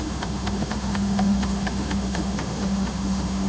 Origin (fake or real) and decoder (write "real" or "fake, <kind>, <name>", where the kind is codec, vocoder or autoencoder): fake, autoencoder, DAC-VAE